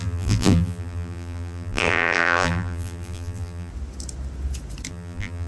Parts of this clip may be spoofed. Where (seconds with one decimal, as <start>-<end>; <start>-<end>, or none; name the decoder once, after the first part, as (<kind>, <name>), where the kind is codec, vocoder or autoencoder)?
0.0-3.7 (vocoder, BigVGAN v2); 4.9-5.5

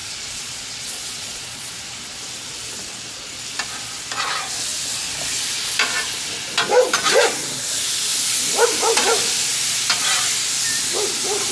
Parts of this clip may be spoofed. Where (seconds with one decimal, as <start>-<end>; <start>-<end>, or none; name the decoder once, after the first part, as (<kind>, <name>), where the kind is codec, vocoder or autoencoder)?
0.0-1.7 (vocoder, Vocos)